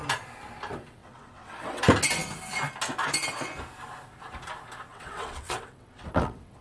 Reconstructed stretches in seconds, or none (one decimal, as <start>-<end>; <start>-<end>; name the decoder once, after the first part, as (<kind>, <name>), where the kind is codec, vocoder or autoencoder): 1.0-1.8 (vocoder, WaveNeXt); 4.9-6.6

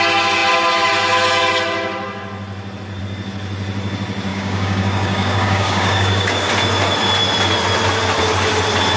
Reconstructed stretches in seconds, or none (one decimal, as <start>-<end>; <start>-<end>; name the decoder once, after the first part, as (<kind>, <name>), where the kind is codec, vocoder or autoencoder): 4.3-6.5 (codec, DAC)

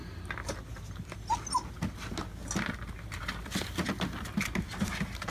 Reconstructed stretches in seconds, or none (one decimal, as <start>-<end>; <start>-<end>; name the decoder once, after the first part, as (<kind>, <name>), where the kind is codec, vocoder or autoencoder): none